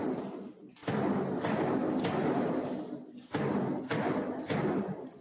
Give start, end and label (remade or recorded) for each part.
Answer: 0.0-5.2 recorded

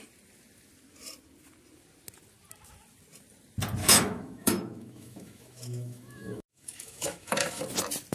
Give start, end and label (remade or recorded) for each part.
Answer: 0.0-3.8 recorded; 3.8-7.6 remade; 7.6-8.1 recorded

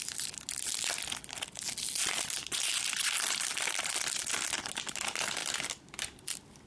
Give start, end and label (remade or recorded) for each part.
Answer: 0.0-2.0 recorded; 2.0-2.7 remade; 2.7-5.4 recorded; 5.4-6.7 remade

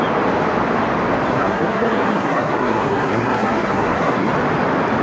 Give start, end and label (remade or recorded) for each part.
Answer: 0.0-1.3 recorded; 1.3-4.3 remade; 4.3-5.0 recorded

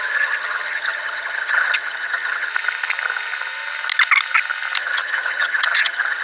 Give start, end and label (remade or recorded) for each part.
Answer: 0.0-2.5 remade; 2.5-4.8 recorded; 4.8-6.2 remade